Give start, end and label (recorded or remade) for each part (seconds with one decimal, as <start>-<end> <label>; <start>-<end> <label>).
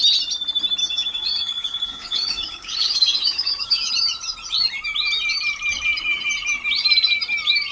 0.0-0.8 recorded; 0.8-3.9 remade; 3.9-7.7 recorded